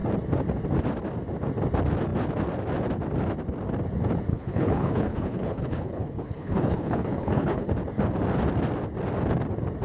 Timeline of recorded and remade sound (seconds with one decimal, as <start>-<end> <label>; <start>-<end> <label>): 0.0-4.3 recorded; 4.3-7.7 remade; 7.7-9.8 recorded